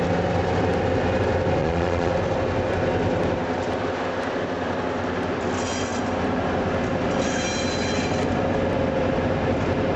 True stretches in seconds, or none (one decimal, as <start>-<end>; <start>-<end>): 0.0-1.6; 2.1-10.0